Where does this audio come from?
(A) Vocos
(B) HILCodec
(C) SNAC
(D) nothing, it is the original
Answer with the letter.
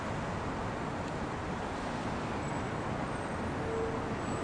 D